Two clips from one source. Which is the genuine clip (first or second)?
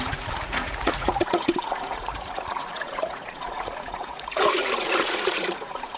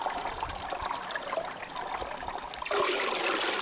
second